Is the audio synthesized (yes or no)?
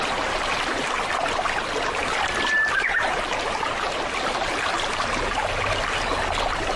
no